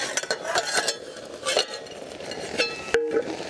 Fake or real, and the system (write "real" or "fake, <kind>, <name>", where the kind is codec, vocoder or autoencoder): real